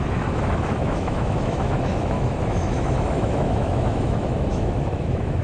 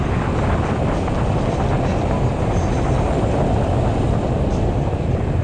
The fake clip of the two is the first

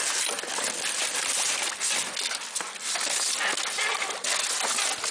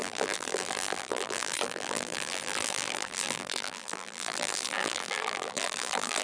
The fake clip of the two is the second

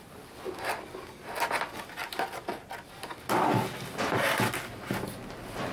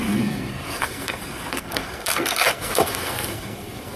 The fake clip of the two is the second